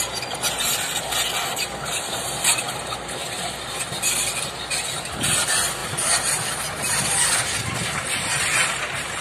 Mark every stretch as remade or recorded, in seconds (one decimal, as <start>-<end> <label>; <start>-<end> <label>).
0.0-3.2 recorded; 3.2-4.0 remade; 4.0-5.8 recorded; 5.8-6.5 remade; 6.5-9.2 recorded